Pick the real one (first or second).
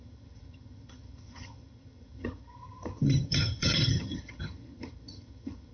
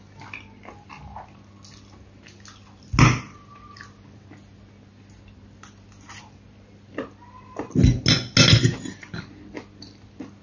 second